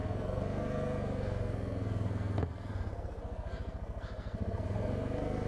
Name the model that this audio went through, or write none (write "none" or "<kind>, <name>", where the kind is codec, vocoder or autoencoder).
codec, SNAC